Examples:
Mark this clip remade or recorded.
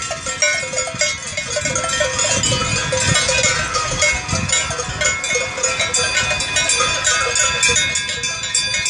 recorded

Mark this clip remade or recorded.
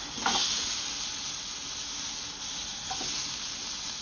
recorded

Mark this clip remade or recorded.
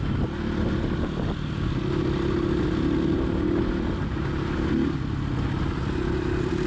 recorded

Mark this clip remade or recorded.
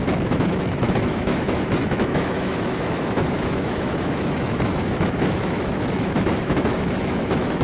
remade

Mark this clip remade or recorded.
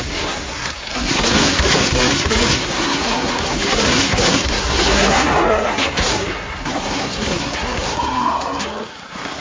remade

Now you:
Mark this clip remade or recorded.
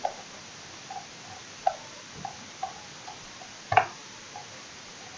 recorded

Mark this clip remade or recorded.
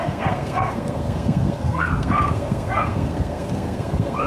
remade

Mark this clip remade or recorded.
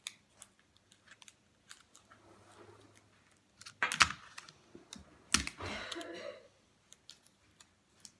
recorded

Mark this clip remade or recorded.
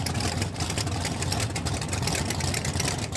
recorded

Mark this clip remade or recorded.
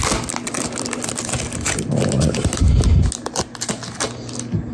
recorded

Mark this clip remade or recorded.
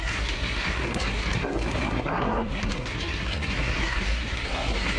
remade